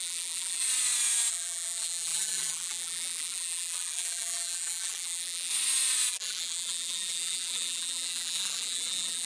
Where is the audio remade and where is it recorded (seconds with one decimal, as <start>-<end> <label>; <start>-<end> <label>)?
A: 0.0-0.6 remade; 0.6-1.3 recorded; 1.3-5.5 remade; 5.5-6.1 recorded; 6.1-9.3 remade